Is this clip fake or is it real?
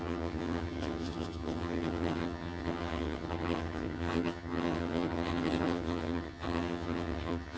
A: fake